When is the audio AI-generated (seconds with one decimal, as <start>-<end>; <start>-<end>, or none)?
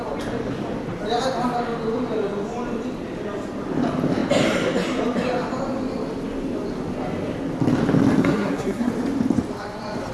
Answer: 8.2-8.9